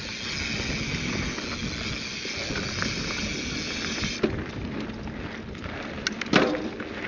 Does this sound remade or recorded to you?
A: recorded